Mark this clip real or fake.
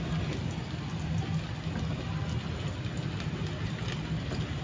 real